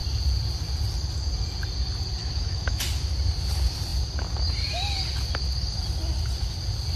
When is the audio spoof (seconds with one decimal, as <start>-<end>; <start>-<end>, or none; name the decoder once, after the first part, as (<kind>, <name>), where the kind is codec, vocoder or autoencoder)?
2.2-2.8 (autoencoder, DAC-VAE)